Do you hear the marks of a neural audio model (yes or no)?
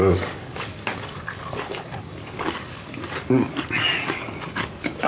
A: yes